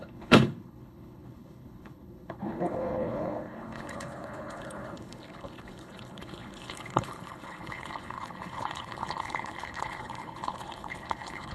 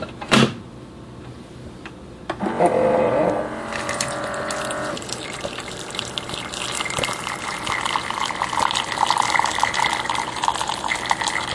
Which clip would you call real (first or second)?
second